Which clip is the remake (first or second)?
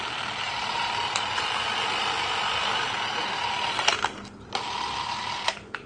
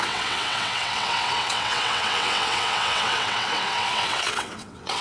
second